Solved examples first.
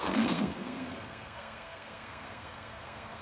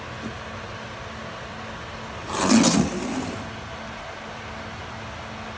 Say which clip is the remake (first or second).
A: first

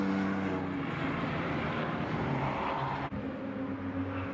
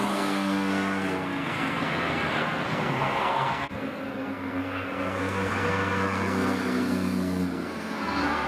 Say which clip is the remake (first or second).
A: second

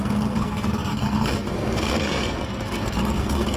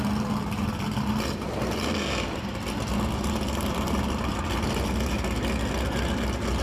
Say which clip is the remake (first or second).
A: first